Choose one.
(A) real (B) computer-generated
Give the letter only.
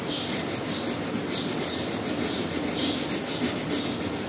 A